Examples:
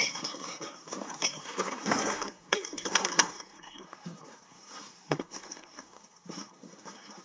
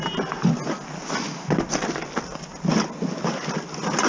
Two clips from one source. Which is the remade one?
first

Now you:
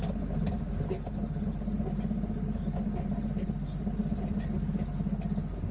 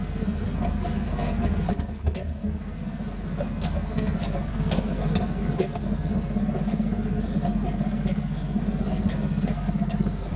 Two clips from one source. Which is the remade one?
second